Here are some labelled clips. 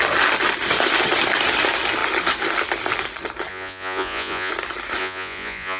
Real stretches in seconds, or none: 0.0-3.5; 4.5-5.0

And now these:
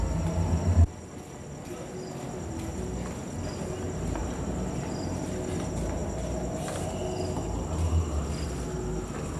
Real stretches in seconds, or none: 0.0-4.2; 5.0-9.4

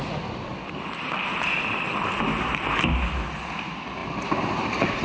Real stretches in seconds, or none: 0.0-5.0

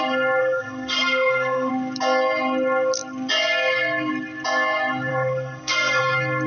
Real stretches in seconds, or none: 0.0-0.4; 1.7-5.1; 6.0-6.5